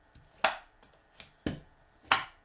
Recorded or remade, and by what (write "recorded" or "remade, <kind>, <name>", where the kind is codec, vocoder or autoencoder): recorded